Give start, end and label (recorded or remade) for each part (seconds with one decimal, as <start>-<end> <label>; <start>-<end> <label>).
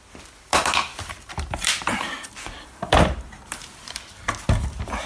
0.0-0.9 recorded; 0.9-4.0 remade; 4.0-5.1 recorded